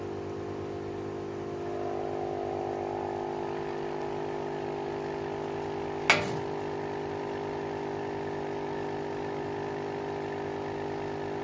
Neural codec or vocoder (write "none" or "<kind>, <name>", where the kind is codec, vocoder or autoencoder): none